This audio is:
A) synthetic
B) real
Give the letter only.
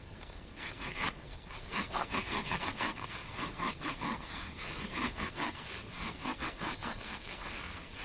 A